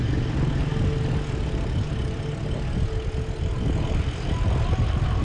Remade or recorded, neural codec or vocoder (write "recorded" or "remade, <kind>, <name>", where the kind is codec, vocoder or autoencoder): recorded